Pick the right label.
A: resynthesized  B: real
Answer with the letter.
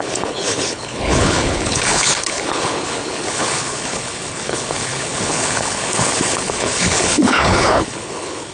A